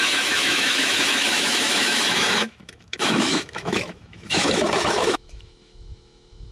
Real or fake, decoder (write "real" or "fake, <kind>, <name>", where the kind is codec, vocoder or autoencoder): fake, autoencoder, DAC-VAE